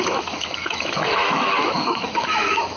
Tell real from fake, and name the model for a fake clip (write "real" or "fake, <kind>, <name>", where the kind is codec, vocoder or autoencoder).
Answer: fake, autoencoder, DAC-VAE